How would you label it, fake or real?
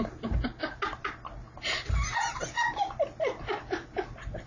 real